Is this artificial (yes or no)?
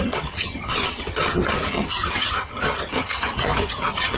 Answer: yes